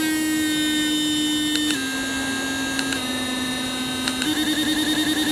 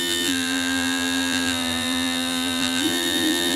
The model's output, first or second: second